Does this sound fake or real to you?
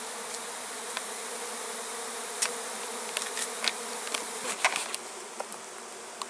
real